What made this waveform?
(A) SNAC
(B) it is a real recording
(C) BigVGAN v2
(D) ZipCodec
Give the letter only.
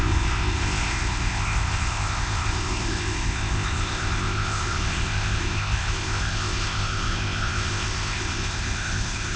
D